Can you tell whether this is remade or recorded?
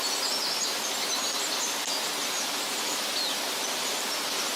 recorded